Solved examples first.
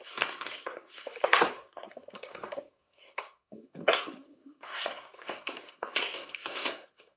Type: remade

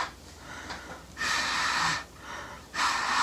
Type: recorded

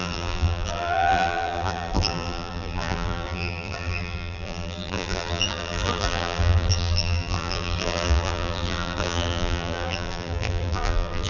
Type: remade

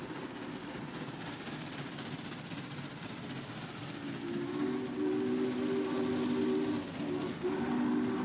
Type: recorded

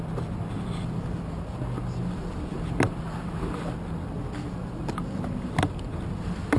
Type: recorded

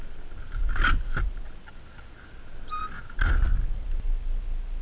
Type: recorded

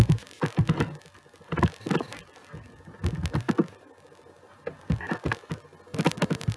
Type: recorded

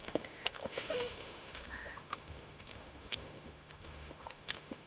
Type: remade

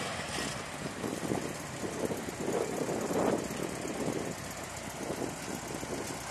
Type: recorded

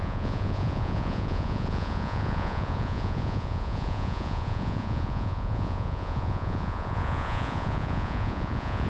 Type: remade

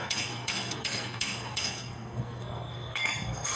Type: remade